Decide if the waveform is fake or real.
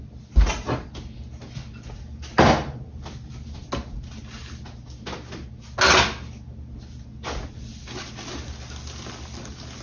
real